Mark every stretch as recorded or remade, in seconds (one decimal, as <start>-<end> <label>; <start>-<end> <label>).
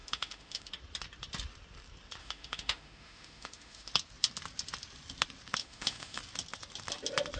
0.0-0.7 remade; 0.7-2.2 recorded; 2.2-3.9 remade; 3.9-5.6 recorded; 5.6-6.2 remade; 6.2-7.4 recorded